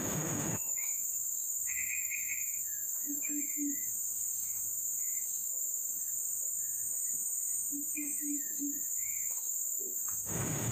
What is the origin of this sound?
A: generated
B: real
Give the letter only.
A